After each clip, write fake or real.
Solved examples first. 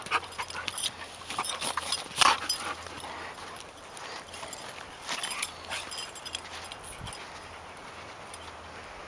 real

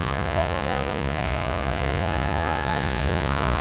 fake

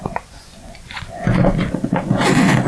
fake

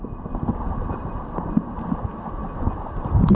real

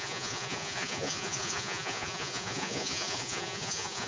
fake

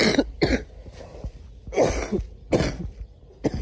real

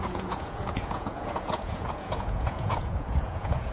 fake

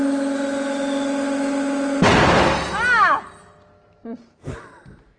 real